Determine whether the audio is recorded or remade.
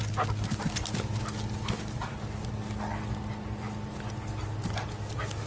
recorded